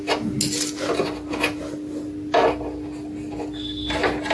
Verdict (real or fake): real